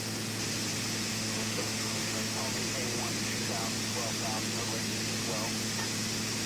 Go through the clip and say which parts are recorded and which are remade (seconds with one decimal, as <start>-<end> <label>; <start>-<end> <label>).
0.0-1.1 recorded; 1.1-2.4 remade; 2.4-6.5 recorded